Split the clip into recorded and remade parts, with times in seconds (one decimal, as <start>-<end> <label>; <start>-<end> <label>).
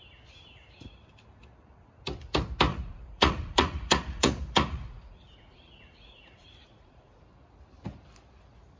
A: 0.0-2.7 recorded; 2.7-7.2 remade; 7.2-8.8 recorded